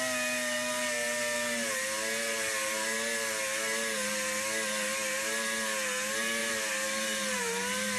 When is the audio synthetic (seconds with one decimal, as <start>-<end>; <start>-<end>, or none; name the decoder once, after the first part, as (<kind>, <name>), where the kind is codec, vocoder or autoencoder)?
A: 6.4-7.4 (vocoder, BigVGAN v2)